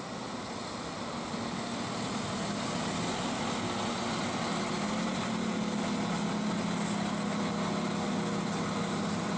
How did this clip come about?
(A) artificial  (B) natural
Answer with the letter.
B